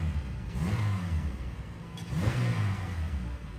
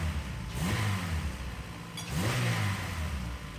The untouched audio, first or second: second